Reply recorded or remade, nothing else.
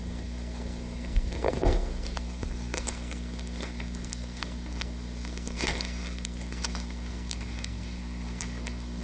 remade